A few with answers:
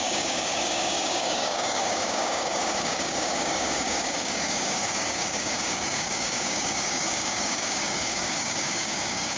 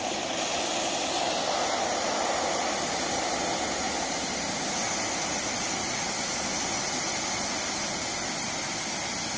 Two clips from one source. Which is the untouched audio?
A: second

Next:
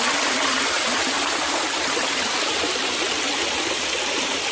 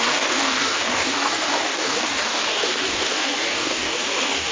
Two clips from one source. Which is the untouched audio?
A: first